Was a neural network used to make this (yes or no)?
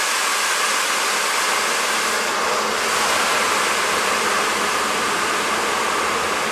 no